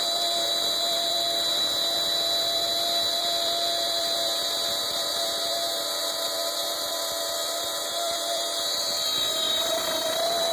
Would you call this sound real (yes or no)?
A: no